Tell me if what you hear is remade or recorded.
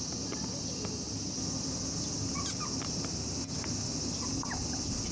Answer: recorded